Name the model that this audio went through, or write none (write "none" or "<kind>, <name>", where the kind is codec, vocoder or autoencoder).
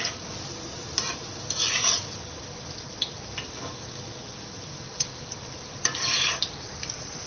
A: none